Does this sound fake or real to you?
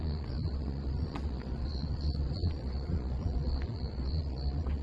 fake